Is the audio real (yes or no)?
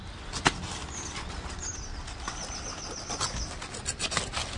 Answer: yes